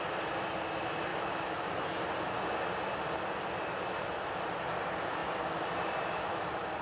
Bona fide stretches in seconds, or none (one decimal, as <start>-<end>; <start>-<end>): 0.0-1.1; 2.0-6.8